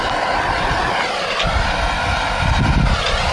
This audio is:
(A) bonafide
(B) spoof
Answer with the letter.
A